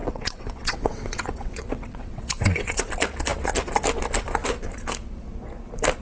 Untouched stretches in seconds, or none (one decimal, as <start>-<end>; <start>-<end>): 2.9-6.0